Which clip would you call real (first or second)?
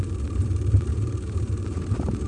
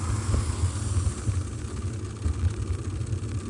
second